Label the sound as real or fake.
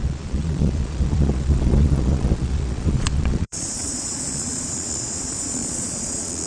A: fake